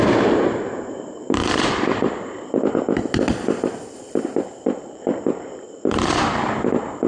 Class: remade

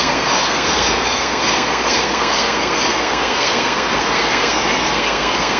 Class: remade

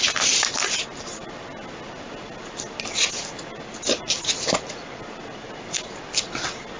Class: recorded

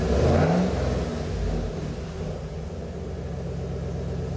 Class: recorded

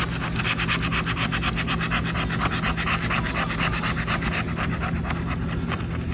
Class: recorded